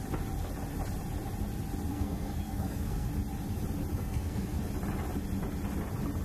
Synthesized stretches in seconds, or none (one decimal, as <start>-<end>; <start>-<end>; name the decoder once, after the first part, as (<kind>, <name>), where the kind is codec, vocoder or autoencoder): 1.9-3.1 (codec, SNAC); 3.9-4.6